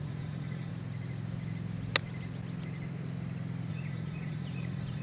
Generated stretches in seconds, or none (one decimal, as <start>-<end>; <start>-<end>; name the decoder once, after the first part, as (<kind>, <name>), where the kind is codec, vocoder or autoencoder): 0.0-0.7 (vocoder, Vocos); 3.7-5.0